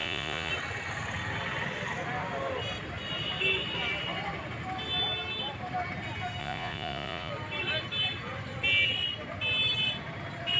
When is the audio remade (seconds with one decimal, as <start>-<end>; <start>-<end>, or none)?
0.0-0.5; 6.4-7.3